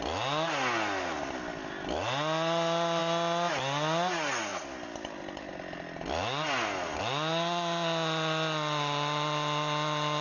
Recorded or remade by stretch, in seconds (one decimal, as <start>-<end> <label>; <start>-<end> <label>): 0.0-10.2 recorded